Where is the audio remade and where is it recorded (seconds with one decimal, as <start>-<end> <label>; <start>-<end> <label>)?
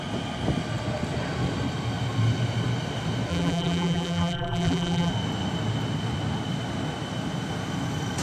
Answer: 0.0-3.3 recorded; 3.3-5.1 remade; 5.1-8.2 recorded